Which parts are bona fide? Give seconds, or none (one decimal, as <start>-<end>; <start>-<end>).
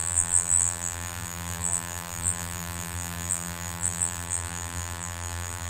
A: none